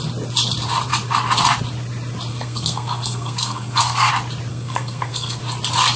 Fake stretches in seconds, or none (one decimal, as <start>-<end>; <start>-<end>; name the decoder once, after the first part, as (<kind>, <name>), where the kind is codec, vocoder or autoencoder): 2.3-4.1 (codec, SNAC); 4.5-5.4